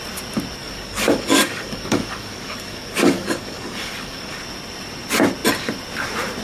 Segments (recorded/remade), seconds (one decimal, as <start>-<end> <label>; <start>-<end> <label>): 0.0-0.6 recorded; 0.6-4.4 remade; 4.4-6.4 recorded